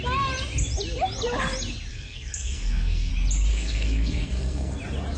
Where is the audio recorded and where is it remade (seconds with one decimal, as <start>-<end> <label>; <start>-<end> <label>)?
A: 0.0-1.9 recorded; 1.9-3.1 remade; 3.1-3.5 recorded; 3.5-4.8 remade; 4.8-5.2 recorded

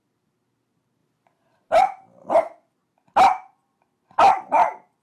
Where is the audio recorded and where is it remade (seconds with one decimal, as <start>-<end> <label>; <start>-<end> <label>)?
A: 0.0-2.8 remade; 2.8-5.0 recorded

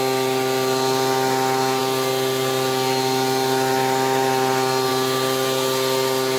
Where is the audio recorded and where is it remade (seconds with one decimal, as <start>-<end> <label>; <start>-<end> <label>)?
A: 0.0-6.4 recorded

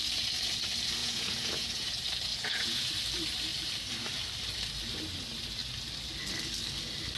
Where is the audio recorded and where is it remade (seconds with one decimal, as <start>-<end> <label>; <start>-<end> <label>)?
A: 0.0-1.0 recorded; 1.0-1.9 remade; 1.9-2.3 recorded; 2.3-2.9 remade; 2.9-7.2 recorded

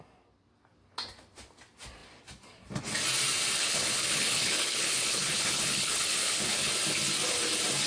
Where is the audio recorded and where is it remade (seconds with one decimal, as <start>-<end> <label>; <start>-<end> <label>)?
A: 0.0-3.6 recorded; 3.6-6.7 remade; 6.7-7.9 recorded

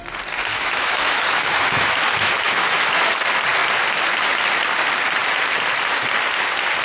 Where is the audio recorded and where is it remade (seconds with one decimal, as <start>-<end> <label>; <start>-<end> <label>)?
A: 0.0-0.5 recorded; 0.5-3.1 remade; 3.1-6.8 recorded

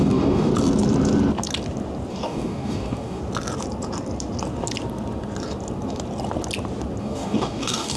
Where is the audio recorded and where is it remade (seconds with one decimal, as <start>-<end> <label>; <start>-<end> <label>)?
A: 0.0-0.5 remade; 0.5-2.1 recorded; 2.1-3.2 remade; 3.2-7.0 recorded; 7.0-8.0 remade